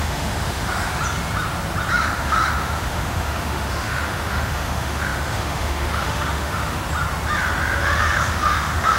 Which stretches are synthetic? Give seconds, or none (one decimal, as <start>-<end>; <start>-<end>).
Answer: 0.0-0.9; 2.0-6.8; 7.8-9.0